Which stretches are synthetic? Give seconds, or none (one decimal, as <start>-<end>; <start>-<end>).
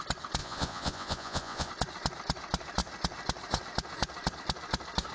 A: 0.4-1.7